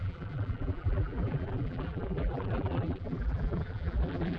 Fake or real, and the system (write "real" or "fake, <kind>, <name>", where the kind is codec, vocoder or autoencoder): fake, vocoder, BigVGAN v2